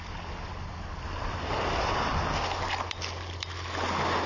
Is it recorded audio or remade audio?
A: recorded